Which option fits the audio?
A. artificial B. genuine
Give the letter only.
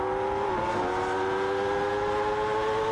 B